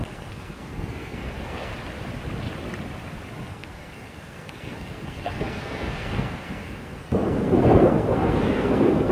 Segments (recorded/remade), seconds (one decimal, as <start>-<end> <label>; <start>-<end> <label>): 0.0-1.7 remade; 1.7-3.5 recorded; 3.5-9.1 remade